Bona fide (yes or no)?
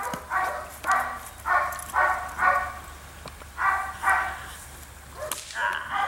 yes